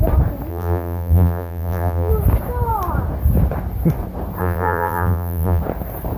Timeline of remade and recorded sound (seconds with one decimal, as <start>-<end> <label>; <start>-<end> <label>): 0.0-0.5 recorded; 0.5-2.1 remade; 2.1-4.4 recorded; 4.4-5.6 remade; 5.6-6.2 recorded